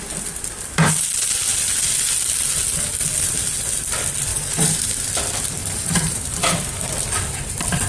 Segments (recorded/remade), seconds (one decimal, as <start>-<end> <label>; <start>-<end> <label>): 0.0-4.3 recorded; 4.3-4.9 remade; 4.9-5.6 recorded; 5.6-6.8 remade; 6.8-7.9 recorded

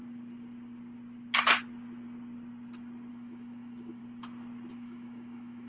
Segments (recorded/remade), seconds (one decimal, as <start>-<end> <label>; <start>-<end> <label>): 0.0-3.1 recorded; 3.1-4.0 remade; 4.0-4.7 recorded; 4.7-5.7 remade

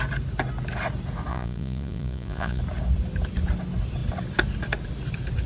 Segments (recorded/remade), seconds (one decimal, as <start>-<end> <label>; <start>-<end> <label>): 0.0-1.3 recorded; 1.3-2.6 remade; 2.6-5.5 recorded

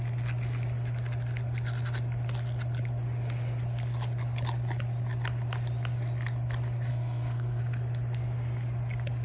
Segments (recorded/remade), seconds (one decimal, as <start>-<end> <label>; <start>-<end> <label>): 0.0-6.9 recorded; 6.9-7.6 remade; 7.6-9.2 recorded